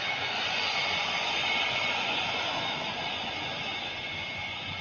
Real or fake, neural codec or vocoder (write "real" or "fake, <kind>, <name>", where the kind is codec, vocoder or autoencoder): fake, vocoder, Vocos